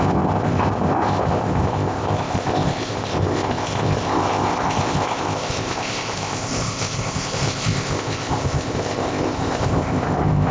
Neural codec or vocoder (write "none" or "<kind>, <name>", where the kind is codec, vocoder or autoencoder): codec, ZipCodec